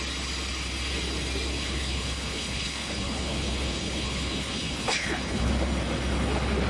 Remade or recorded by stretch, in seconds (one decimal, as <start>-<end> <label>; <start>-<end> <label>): 0.0-1.5 recorded; 1.5-5.5 remade; 5.5-6.7 recorded